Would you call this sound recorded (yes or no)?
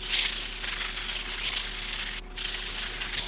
yes